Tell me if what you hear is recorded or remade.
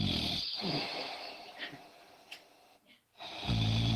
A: remade